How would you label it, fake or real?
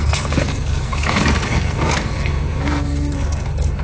fake